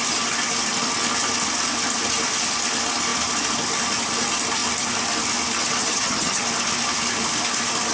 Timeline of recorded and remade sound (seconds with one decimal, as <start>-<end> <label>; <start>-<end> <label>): 0.0-5.8 recorded; 5.8-6.4 remade; 6.4-7.9 recorded